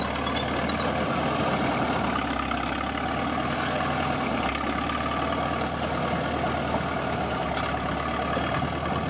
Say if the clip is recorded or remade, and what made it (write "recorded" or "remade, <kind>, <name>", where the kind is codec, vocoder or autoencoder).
recorded